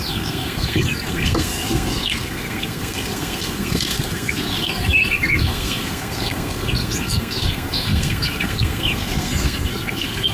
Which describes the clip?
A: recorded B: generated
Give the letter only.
B